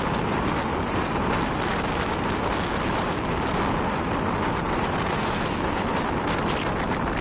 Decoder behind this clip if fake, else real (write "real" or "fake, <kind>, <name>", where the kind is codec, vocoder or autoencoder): real